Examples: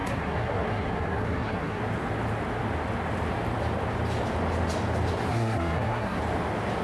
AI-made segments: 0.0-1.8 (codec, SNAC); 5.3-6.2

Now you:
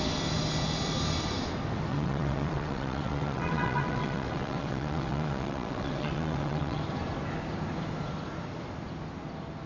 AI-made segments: 1.9-6.8 (vocoder, WaveNeXt)

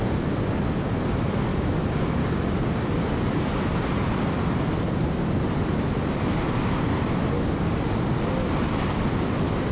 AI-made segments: 1.5-2.4 (codec, DAC)

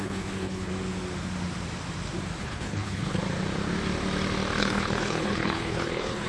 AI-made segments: 0.0-0.7 (codec, HILCodec); 2.4-3.2; 4.6-6.3